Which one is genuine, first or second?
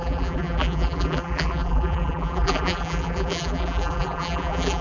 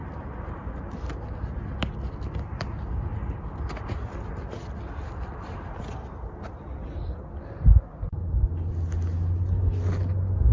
second